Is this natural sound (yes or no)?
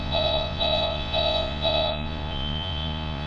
no